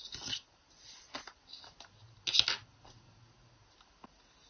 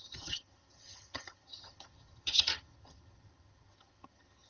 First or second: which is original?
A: first